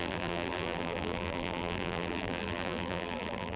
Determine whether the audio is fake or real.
fake